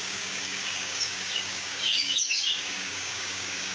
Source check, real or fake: fake